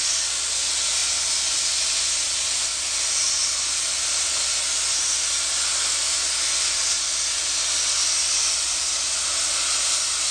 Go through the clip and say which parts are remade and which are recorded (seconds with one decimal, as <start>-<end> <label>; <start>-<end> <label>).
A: 0.0-10.3 recorded